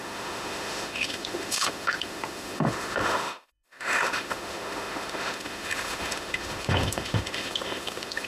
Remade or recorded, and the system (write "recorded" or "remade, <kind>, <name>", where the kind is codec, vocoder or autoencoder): remade, autoencoder, DAC-VAE